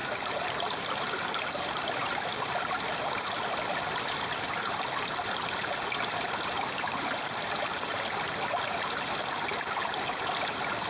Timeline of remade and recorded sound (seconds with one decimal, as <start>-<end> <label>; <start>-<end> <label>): 0.0-0.6 remade; 0.6-2.0 recorded; 2.0-2.5 remade; 2.5-10.9 recorded